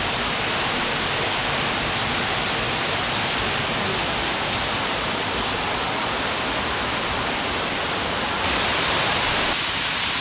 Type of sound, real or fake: real